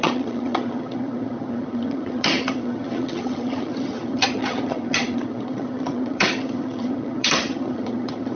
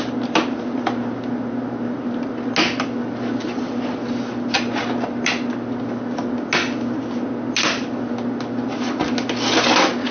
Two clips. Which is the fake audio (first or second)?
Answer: first